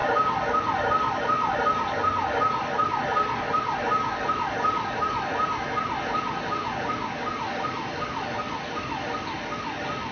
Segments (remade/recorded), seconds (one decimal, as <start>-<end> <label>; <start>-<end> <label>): 0.0-10.1 recorded